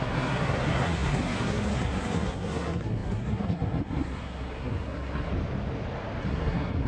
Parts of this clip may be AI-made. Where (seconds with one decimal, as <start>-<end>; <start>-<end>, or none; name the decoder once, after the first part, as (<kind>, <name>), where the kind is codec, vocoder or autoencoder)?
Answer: 0.0-5.3 (codec, SNAC); 6.2-6.9